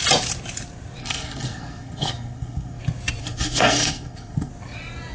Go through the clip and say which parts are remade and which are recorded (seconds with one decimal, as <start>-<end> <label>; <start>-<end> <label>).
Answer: 0.0-1.0 recorded; 1.0-2.8 remade; 2.8-3.2 recorded; 3.2-4.5 remade; 4.5-5.1 recorded